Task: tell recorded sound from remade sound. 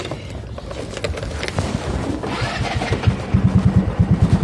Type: recorded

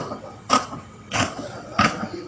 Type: remade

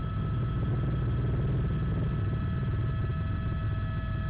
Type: recorded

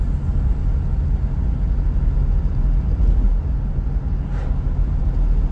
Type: recorded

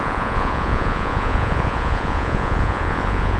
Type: remade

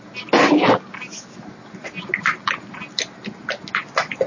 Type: recorded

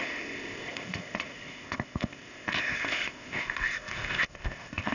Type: remade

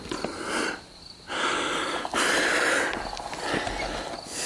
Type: recorded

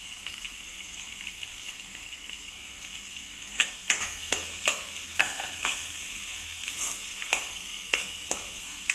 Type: remade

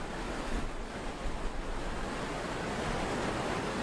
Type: recorded